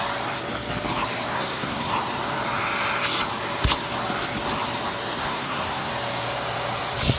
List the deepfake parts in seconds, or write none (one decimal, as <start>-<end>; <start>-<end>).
1.3-1.9; 5.2-5.9